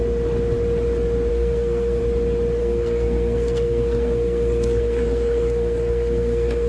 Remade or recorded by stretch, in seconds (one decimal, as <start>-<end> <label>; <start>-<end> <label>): 0.0-1.3 recorded; 1.3-2.0 remade; 2.0-2.6 recorded; 2.6-6.7 remade